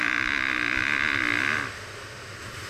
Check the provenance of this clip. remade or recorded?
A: recorded